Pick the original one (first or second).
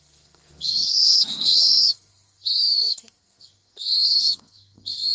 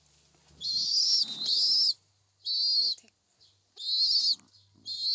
second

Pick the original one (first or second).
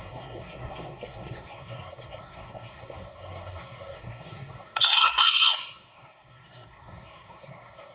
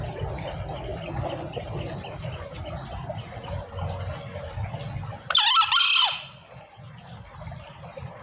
second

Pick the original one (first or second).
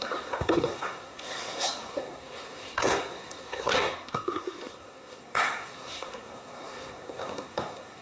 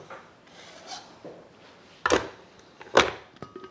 second